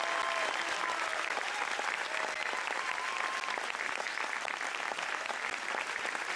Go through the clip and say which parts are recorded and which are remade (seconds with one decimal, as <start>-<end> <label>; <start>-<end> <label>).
0.0-6.4 recorded